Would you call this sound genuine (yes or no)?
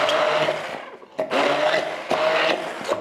yes